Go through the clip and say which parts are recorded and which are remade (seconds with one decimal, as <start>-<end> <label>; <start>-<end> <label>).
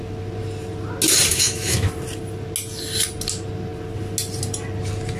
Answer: 0.0-1.3 recorded; 1.3-1.9 remade; 1.9-5.2 recorded